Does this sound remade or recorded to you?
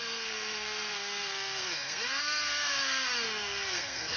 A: remade